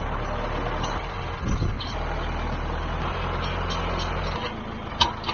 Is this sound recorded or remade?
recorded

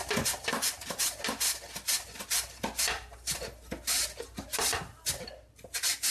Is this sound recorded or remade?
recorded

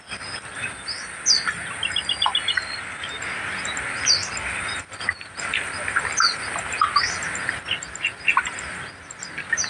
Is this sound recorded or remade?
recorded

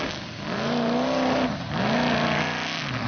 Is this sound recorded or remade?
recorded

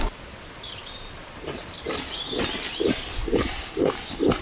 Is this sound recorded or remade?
recorded